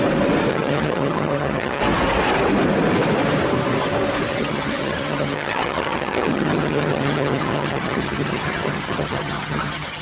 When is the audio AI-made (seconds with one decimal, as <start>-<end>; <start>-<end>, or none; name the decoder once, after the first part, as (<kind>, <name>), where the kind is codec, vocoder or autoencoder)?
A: 0.5-1.8 (vocoder, HiFi-GAN); 4.3-10.0